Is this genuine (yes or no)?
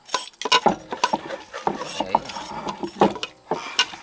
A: yes